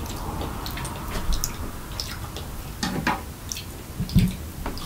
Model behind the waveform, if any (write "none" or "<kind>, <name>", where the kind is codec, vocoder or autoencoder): none